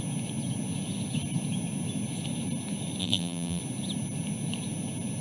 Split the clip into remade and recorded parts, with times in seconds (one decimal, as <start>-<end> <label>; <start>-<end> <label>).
0.0-3.0 recorded; 3.0-3.6 remade; 3.6-5.2 recorded